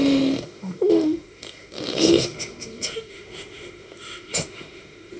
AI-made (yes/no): yes